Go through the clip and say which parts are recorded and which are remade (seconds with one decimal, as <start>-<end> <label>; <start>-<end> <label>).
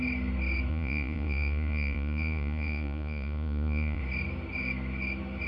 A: 0.0-0.7 recorded; 0.7-4.0 remade; 4.0-5.5 recorded